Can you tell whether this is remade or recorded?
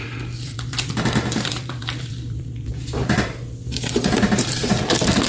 remade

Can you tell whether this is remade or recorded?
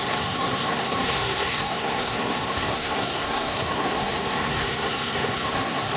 remade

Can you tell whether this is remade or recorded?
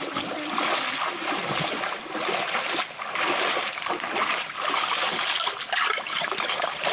recorded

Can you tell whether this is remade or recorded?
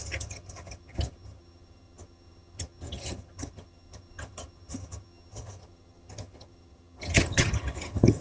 remade